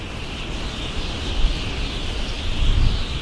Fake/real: real